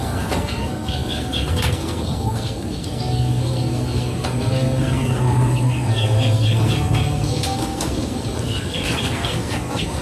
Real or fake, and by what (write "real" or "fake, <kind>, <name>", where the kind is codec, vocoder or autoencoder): fake, codec, SNAC